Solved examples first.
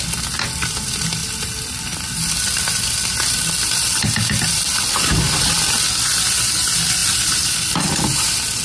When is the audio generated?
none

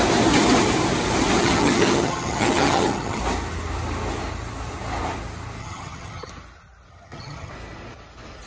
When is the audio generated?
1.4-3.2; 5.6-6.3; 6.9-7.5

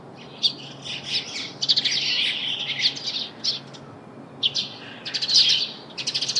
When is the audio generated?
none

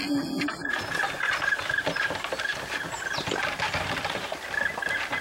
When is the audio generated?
none

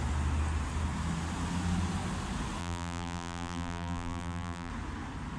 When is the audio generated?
2.6-4.7

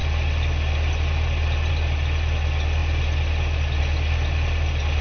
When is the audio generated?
none

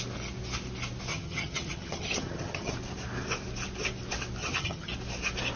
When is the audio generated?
1.1-2.7; 4.4-4.9

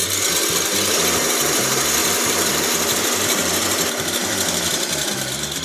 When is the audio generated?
2.0-5.6